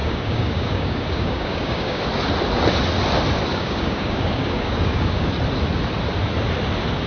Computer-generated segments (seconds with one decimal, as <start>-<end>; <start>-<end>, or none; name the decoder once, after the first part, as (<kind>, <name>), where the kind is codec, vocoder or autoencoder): 0.0-2.0 (codec, DAC); 3.5-5.3

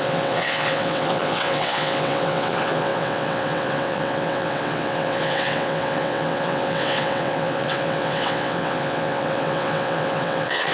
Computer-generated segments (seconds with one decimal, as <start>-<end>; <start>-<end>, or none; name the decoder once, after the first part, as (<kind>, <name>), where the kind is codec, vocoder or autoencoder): 0.0-10.7 (vocoder, WaveNeXt)